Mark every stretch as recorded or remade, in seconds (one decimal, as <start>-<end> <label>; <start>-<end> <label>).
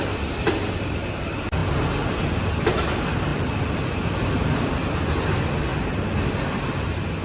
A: 0.0-3.3 recorded; 3.3-3.9 remade; 3.9-7.2 recorded